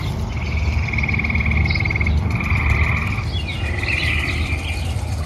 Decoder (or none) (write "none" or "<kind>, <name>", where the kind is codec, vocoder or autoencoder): none